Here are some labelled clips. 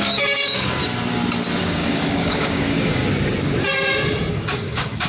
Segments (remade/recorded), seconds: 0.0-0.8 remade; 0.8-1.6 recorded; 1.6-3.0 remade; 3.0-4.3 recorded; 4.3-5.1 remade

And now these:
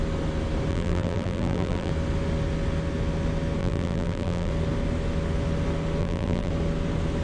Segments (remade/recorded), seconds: 0.0-0.7 recorded; 0.7-1.9 remade; 1.9-3.6 recorded; 3.6-4.5 remade; 4.5-6.0 recorded; 6.0-6.5 remade; 6.5-7.2 recorded

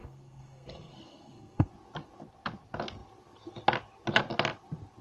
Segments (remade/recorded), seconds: 0.0-1.7 remade; 1.7-5.0 recorded

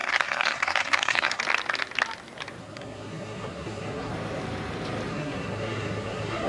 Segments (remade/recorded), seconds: 0.0-1.4 remade; 1.4-2.6 recorded; 2.6-4.1 remade; 4.1-5.1 recorded; 5.1-6.5 remade

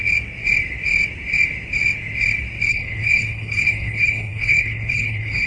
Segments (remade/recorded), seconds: 0.0-2.7 recorded; 2.7-5.5 remade

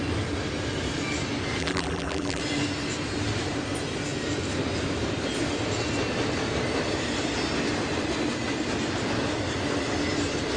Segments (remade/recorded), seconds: 0.0-1.6 recorded; 1.6-2.4 remade; 2.4-10.6 recorded

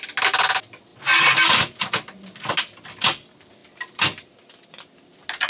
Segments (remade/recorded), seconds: 0.0-5.5 recorded